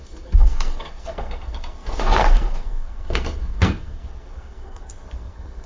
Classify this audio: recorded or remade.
remade